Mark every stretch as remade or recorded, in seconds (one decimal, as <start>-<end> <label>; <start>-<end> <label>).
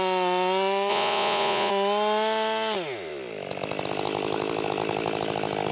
0.0-0.9 recorded; 0.9-1.7 remade; 1.7-5.7 recorded